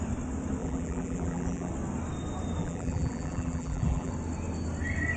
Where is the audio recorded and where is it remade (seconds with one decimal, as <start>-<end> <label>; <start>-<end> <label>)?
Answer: 0.0-0.6 recorded; 0.6-1.7 remade; 1.7-2.6 recorded; 2.6-4.1 remade; 4.1-5.2 recorded